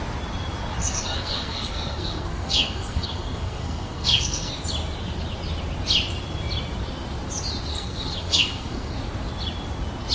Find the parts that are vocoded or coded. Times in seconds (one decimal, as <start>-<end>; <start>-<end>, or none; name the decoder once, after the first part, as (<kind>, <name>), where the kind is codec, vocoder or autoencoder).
0.8-4.5 (codec, SNAC); 7.7-8.9